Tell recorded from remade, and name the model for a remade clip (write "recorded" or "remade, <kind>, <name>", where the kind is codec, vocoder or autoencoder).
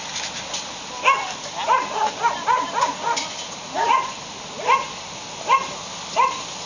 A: recorded